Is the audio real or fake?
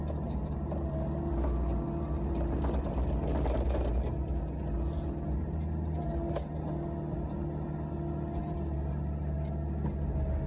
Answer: real